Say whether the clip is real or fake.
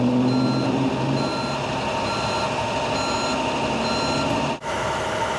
real